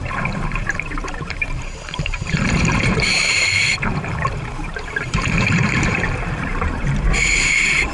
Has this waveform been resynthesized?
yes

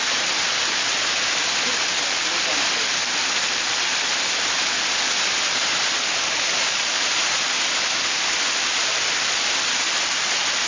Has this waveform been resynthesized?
no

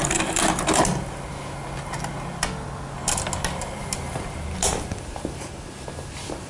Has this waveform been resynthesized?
no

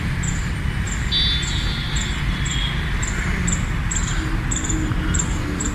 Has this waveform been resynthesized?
no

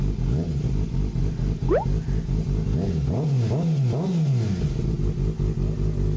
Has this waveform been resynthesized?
no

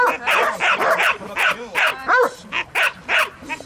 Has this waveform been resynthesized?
yes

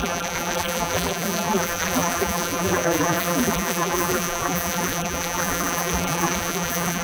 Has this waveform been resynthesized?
yes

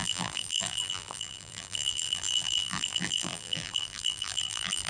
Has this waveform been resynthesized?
yes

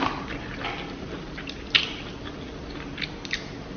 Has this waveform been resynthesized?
no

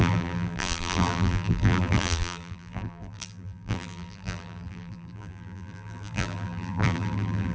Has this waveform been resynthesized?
yes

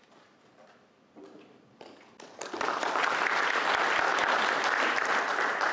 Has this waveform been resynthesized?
yes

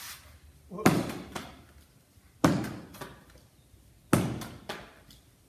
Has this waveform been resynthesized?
no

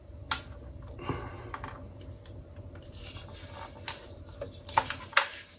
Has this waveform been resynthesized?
no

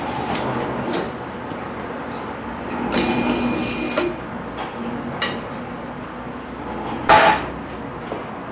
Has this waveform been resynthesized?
no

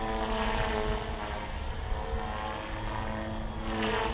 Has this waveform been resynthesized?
no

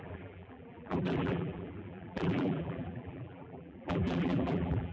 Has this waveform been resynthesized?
yes